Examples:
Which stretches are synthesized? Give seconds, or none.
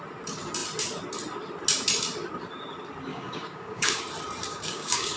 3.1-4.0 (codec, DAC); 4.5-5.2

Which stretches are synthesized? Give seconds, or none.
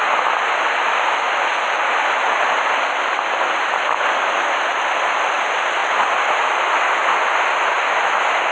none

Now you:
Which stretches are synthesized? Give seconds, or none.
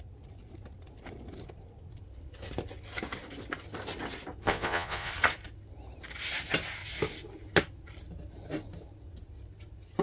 4.4-5.1 (vocoder, Vocos)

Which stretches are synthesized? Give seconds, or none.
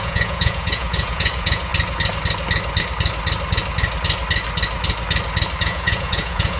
0.0-1.7 (vocoder, Vocos); 5.6-6.6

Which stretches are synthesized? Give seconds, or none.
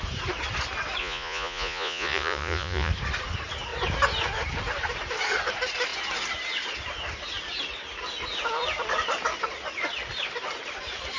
1.0-2.9 (vocoder, Vocos)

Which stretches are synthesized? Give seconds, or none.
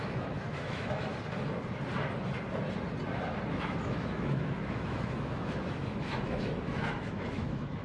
0.0-1.1 (autoencoder, DAC-VAE); 3.5-7.8